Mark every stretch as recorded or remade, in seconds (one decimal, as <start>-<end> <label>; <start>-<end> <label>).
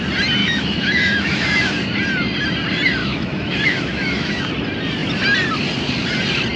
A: 0.0-0.4 recorded; 0.4-1.7 remade; 1.7-3.0 recorded; 3.0-4.4 remade; 4.4-6.6 recorded